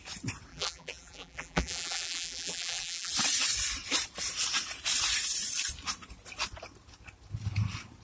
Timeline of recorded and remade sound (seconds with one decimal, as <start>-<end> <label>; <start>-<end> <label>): 0.0-0.5 recorded; 0.5-3.1 remade; 3.1-8.0 recorded